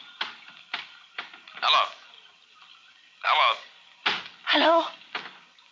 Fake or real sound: real